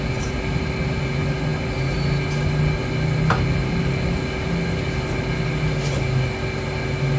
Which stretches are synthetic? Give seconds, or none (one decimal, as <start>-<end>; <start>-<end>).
none